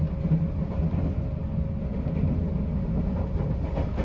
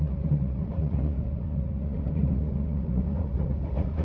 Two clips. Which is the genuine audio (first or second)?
first